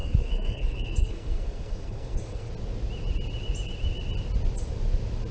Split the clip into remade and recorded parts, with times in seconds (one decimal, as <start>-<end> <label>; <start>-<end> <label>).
0.0-2.5 remade; 2.5-5.3 recorded